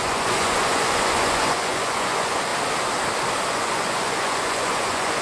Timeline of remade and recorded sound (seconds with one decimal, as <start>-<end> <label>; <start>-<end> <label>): 0.0-2.5 remade; 2.5-3.5 recorded; 3.5-5.2 remade